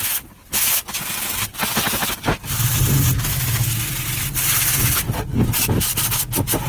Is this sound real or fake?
real